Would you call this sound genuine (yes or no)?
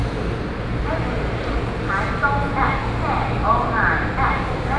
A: yes